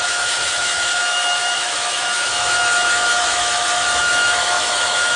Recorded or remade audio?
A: remade